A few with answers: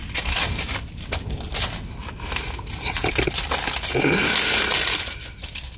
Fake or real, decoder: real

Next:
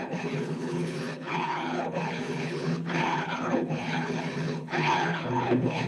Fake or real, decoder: fake, codec, HILCodec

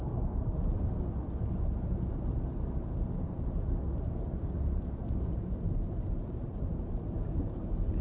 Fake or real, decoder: real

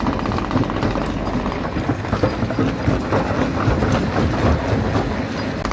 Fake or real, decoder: real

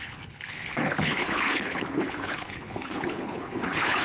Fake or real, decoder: fake, codec, HILCodec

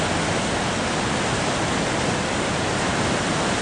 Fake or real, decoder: real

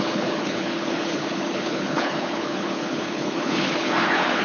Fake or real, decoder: fake, codec, HILCodec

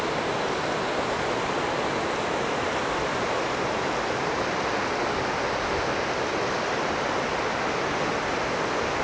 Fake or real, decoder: real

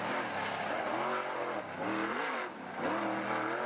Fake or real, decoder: real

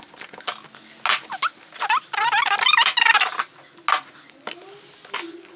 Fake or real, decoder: real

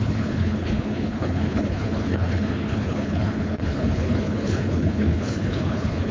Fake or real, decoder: fake, codec, HILCodec